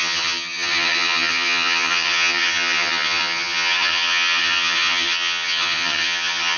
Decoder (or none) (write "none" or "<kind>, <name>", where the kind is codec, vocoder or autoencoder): vocoder, HiFi-GAN